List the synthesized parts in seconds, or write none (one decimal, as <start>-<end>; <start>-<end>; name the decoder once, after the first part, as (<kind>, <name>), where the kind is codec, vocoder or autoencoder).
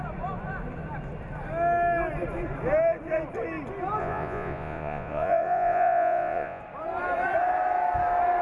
4.0-6.6 (vocoder, Vocos)